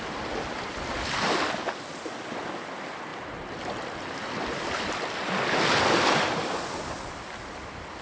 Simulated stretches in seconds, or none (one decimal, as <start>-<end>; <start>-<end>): none